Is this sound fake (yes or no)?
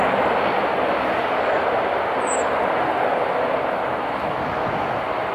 no